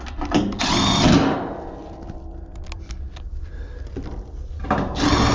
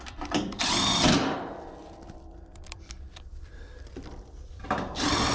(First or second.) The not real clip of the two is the second